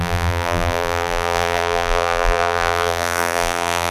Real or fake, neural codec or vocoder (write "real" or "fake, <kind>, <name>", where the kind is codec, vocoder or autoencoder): fake, vocoder, BigVGAN v2